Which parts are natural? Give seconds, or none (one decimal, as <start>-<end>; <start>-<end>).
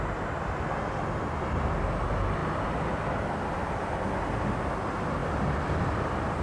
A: 0.0-6.4